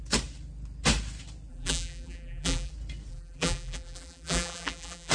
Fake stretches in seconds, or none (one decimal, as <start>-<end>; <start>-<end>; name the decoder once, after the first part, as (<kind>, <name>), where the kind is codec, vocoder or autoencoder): 1.5-2.7 (vocoder, BigVGAN v2); 3.1-5.1